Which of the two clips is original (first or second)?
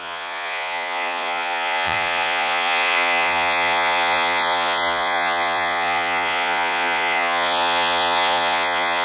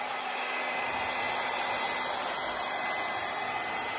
second